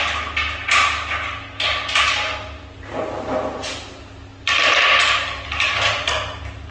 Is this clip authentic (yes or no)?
yes